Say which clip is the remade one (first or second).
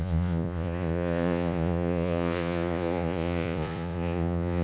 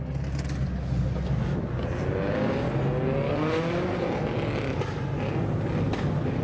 first